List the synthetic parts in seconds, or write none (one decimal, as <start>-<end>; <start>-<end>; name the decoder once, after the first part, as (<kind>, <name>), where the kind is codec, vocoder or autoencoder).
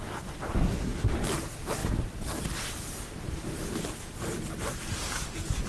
0.6-1.1 (codec, SNAC)